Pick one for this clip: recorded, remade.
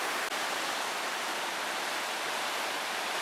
recorded